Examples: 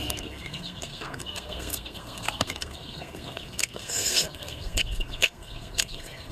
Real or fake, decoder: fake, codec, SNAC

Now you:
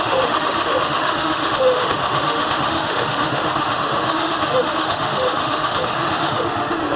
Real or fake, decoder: fake, autoencoder, DAC-VAE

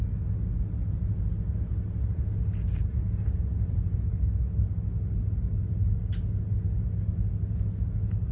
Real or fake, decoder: real